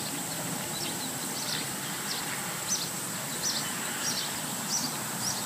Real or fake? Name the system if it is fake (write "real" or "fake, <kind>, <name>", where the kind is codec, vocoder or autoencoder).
real